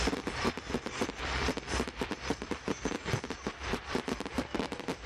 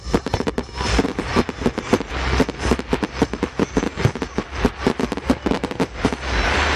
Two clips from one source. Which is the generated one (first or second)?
first